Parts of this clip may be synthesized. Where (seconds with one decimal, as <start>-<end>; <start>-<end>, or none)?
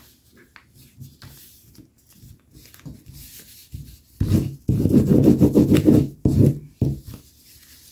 none